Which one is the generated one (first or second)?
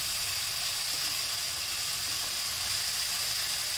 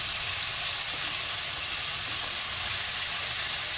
second